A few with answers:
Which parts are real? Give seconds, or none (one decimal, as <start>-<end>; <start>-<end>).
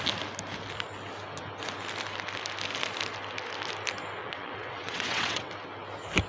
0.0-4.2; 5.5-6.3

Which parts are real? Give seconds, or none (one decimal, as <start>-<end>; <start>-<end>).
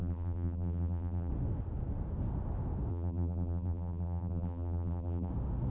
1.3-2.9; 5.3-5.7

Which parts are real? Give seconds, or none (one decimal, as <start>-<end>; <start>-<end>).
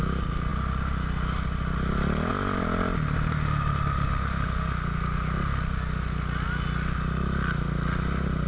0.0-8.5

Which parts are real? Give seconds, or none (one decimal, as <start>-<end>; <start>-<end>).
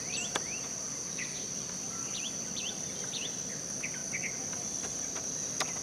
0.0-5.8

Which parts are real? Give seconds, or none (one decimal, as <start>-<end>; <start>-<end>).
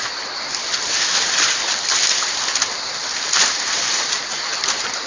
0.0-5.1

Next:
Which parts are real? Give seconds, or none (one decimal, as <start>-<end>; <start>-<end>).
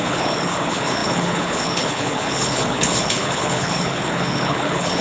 none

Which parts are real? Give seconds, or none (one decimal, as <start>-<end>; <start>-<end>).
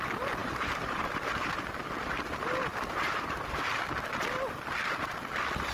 0.0-0.4; 1.7-2.7; 3.6-5.7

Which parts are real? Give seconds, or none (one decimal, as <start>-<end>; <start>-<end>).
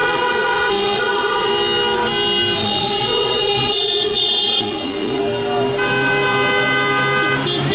1.5-2.6; 5.2-7.7